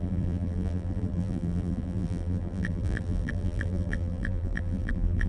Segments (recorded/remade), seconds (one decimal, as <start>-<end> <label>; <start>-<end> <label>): 0.0-5.3 remade